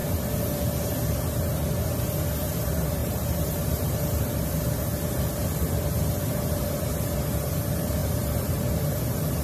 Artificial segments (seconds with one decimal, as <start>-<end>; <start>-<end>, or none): 3.0-4.0